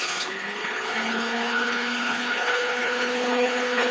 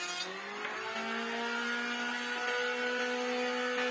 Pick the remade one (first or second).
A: first